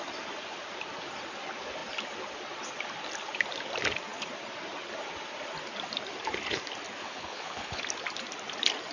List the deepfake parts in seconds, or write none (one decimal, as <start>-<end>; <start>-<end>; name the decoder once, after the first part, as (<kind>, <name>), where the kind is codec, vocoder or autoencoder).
7.0-7.8 (codec, HILCodec)